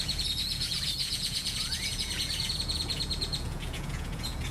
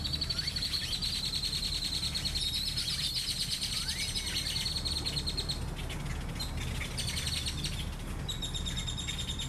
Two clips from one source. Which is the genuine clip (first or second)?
second